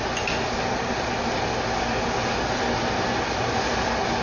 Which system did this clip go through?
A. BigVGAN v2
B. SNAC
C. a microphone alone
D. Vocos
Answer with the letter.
C